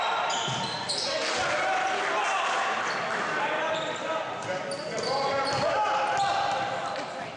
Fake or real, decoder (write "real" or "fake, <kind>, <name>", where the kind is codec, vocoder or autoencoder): real